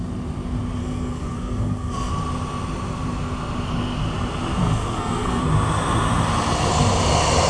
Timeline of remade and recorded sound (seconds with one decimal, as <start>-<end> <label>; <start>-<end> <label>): 0.0-0.8 recorded; 0.8-2.1 remade; 2.1-4.6 recorded; 4.6-5.4 remade; 5.4-7.5 recorded